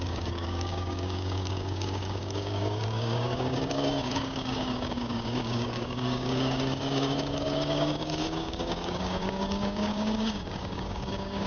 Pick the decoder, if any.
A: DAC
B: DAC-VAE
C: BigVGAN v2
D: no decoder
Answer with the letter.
A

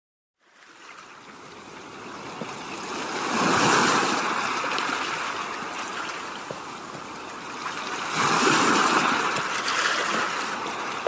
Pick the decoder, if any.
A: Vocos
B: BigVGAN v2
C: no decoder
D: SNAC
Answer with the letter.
C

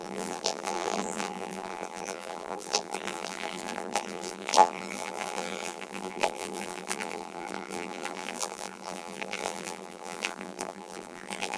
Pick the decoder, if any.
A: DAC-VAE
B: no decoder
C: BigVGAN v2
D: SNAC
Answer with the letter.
C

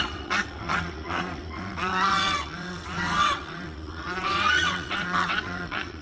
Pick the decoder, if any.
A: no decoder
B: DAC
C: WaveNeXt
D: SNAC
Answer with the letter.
C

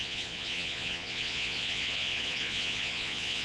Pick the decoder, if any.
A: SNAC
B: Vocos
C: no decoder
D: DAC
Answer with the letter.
B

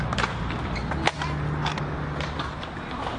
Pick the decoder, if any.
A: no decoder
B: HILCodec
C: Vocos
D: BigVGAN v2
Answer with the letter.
A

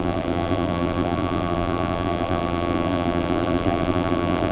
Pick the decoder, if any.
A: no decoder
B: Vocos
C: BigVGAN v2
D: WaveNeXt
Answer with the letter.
C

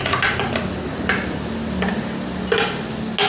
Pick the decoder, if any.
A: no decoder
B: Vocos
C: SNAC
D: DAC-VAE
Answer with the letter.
A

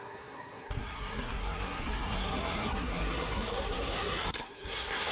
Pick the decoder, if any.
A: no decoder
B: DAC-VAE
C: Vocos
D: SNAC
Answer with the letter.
D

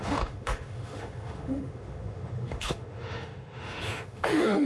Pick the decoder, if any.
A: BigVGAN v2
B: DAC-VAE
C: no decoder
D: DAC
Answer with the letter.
B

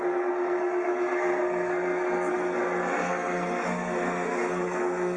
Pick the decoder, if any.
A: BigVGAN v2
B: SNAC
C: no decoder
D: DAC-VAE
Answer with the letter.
B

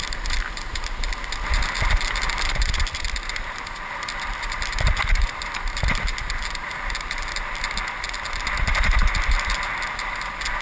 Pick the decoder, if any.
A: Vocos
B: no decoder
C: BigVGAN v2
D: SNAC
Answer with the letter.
C